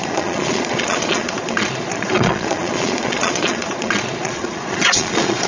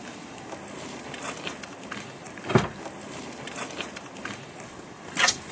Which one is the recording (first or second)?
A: second